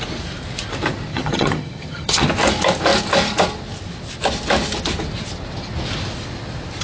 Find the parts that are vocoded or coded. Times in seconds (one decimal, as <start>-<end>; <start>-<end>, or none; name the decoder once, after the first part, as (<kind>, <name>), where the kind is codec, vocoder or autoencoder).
1.1-2.2 (vocoder, HiFi-GAN)